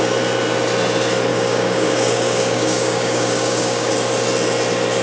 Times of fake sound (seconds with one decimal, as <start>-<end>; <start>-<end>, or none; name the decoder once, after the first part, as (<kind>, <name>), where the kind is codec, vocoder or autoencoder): 1.3-3.9 (codec, DAC)